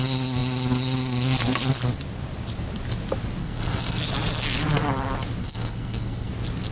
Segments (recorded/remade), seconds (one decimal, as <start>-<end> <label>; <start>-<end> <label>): 0.0-3.4 recorded; 3.4-4.0 remade; 4.0-5.4 recorded; 5.4-6.3 remade; 6.3-6.7 recorded